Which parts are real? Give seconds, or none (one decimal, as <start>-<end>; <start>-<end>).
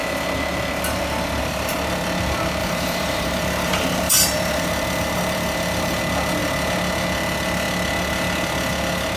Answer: 0.0-2.6; 6.0-9.2